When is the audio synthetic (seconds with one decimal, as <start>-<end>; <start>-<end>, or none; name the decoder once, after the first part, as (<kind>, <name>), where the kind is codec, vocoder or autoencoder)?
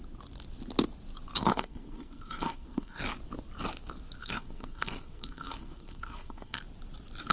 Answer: 1.5-3.0 (codec, SNAC); 4.2-6.6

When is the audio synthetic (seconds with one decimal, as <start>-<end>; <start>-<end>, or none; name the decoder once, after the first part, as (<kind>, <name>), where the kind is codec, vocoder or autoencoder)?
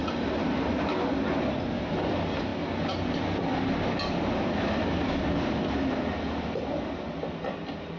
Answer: none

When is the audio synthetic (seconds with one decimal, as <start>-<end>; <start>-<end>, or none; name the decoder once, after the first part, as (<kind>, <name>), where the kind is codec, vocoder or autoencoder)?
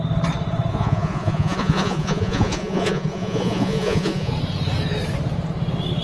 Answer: 0.7-4.3 (vocoder, Vocos)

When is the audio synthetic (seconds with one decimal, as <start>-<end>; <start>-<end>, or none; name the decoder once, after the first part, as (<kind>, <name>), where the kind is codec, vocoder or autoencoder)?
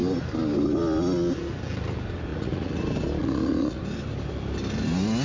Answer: 2.3-2.8 (vocoder, Vocos); 3.2-3.8